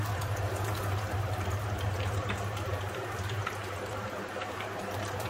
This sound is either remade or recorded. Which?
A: remade